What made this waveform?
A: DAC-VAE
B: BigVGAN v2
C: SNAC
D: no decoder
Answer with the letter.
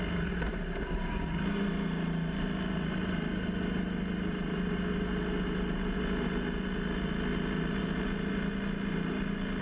D